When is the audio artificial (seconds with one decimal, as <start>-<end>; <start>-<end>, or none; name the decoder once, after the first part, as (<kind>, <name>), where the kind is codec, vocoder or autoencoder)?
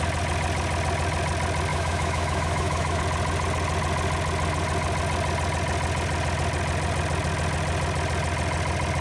1.7-3.0 (autoencoder, DAC-VAE)